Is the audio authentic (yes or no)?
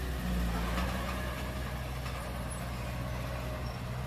yes